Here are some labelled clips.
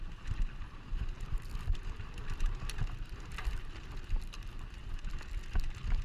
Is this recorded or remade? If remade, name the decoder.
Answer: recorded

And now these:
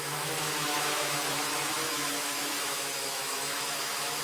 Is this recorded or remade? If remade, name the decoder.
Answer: remade, autoencoder, DAC-VAE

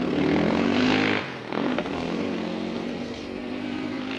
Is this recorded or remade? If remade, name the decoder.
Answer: remade, codec, SNAC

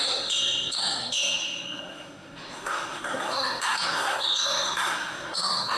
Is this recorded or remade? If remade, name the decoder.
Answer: remade, codec, SNAC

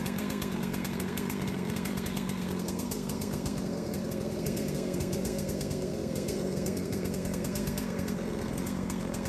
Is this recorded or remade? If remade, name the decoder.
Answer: remade, codec, SNAC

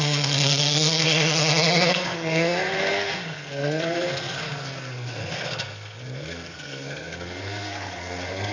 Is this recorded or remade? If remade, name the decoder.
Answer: remade, codec, SNAC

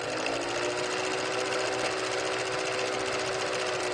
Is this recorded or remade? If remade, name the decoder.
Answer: recorded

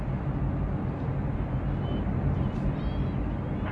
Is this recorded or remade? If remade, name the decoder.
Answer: recorded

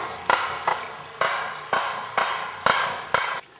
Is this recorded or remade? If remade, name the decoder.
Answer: recorded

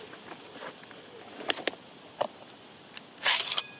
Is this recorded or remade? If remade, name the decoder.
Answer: recorded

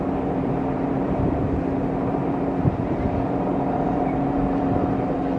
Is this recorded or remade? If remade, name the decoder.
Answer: remade, vocoder, BigVGAN v2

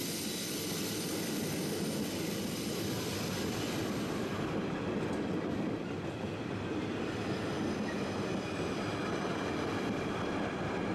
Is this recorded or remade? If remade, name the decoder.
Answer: recorded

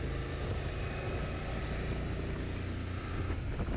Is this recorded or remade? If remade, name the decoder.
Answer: recorded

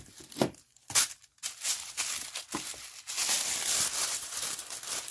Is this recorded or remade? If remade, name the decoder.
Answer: recorded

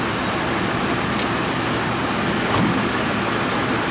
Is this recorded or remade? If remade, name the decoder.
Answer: recorded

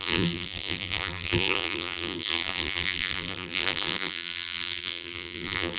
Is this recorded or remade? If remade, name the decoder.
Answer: remade, vocoder, BigVGAN v2